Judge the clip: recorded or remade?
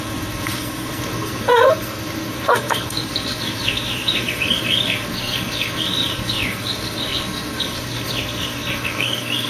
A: remade